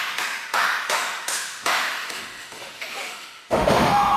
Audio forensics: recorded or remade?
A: remade